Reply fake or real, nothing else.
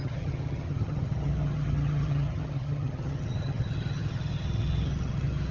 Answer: fake